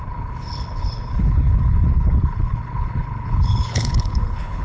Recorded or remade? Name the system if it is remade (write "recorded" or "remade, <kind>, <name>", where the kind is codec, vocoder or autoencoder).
remade, codec, HILCodec